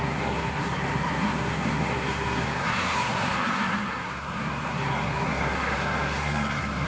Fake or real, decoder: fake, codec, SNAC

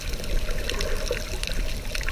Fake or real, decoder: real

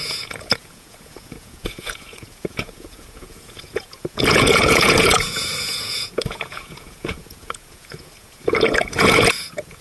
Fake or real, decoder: fake, vocoder, Vocos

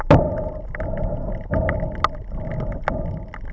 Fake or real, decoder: real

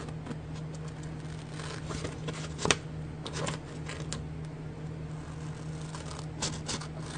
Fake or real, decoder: real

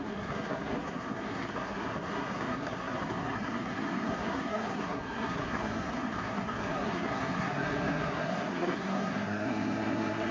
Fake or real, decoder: fake, codec, SNAC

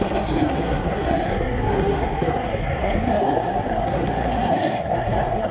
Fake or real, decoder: fake, codec, SNAC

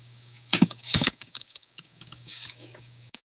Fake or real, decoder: fake, codec, DAC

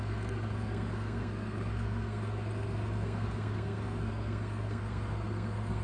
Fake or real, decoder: fake, codec, SNAC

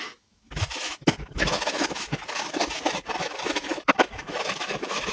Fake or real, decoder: fake, autoencoder, DAC-VAE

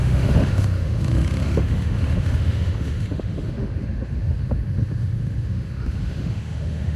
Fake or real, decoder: fake, autoencoder, DAC-VAE